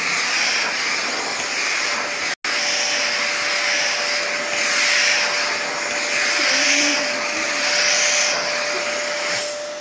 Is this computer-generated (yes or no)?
no